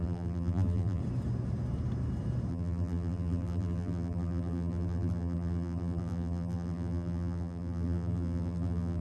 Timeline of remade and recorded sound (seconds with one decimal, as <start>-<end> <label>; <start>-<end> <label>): 0.0-1.0 remade; 1.0-2.5 recorded; 2.5-9.0 remade